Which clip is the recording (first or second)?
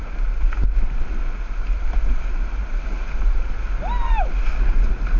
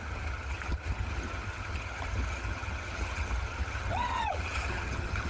first